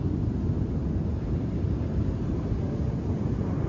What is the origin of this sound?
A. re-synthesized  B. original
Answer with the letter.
B